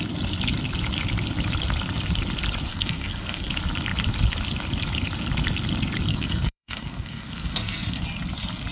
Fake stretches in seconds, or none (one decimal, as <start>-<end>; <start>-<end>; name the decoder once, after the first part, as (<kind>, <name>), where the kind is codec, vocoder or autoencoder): 2.7-3.5 (codec, SNAC); 6.1-8.0